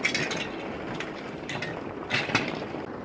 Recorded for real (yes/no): yes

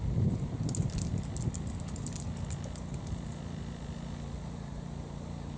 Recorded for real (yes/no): yes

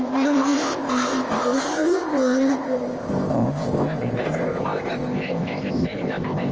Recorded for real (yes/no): no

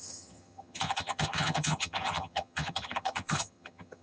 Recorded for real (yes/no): no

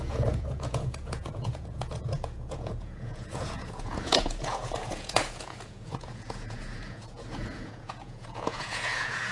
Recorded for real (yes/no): no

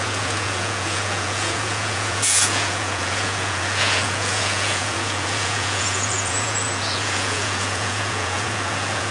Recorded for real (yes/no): no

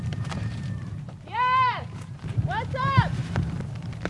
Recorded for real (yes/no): no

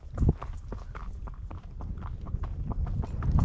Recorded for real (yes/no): yes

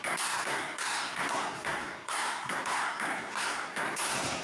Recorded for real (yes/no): no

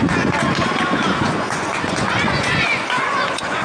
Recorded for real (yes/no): no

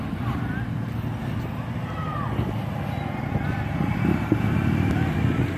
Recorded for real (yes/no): yes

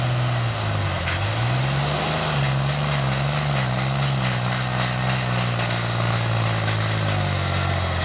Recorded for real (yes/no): yes